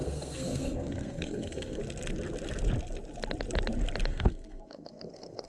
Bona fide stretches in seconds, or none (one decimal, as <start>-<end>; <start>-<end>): 1.8-4.1